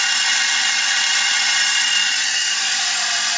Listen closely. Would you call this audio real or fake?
real